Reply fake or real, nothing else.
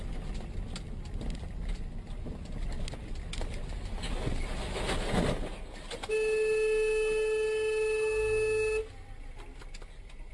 real